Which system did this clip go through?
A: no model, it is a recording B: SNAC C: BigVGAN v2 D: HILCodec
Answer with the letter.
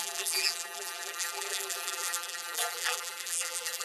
C